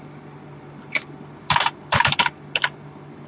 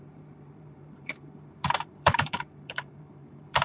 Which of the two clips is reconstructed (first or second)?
second